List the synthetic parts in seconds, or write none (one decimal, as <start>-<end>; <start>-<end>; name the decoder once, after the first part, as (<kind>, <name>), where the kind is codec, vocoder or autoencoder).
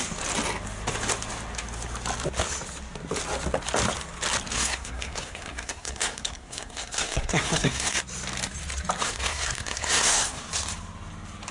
4.5-8.0 (codec, SNAC); 9.0-10.5